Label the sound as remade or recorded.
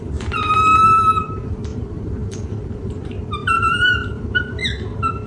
remade